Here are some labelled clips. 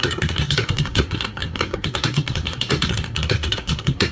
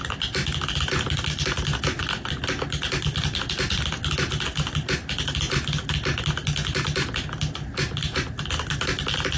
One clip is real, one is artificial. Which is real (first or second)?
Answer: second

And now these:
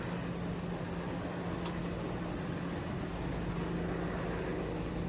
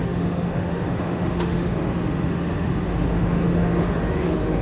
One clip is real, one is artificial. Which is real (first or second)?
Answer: first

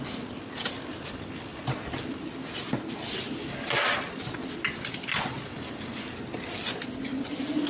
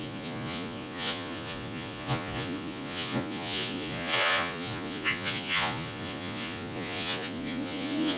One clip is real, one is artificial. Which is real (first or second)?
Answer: first